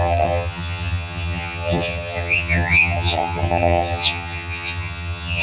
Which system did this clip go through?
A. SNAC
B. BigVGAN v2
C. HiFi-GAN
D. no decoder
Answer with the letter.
C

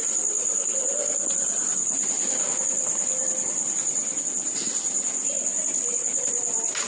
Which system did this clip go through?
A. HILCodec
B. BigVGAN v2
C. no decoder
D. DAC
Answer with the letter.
B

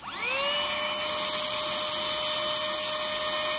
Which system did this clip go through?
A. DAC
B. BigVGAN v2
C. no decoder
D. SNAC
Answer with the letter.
C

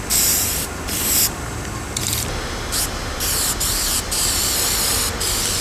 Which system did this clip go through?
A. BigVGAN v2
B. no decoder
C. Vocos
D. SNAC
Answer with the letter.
A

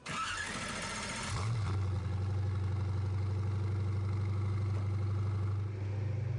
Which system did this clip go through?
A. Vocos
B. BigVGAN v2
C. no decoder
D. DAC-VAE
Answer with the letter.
C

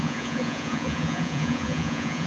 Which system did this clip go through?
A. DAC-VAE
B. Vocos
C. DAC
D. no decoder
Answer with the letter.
B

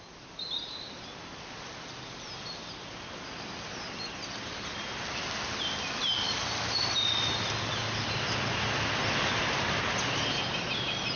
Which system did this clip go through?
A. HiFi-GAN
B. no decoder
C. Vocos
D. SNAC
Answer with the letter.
B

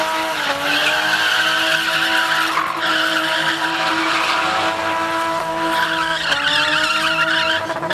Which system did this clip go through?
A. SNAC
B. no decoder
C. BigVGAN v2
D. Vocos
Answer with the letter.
B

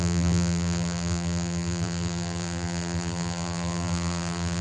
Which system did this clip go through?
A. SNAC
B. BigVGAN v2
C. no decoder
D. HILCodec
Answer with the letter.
B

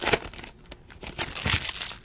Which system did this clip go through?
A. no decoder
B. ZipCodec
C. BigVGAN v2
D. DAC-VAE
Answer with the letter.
A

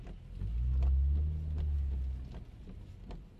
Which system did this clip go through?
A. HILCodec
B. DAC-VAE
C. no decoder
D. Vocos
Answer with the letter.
C